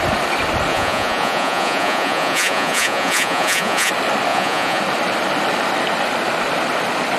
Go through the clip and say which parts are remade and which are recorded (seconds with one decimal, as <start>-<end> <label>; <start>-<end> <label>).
0.0-0.7 recorded; 0.7-3.9 remade; 3.9-4.3 recorded; 4.3-4.8 remade; 4.8-7.2 recorded